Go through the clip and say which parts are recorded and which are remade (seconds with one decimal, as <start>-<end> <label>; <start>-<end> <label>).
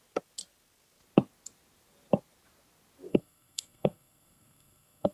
0.0-3.1 recorded; 3.1-5.1 remade